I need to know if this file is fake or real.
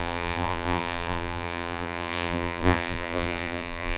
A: fake